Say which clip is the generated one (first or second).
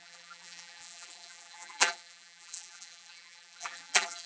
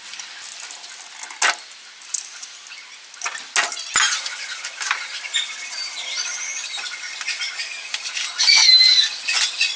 first